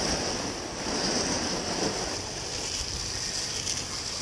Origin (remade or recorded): recorded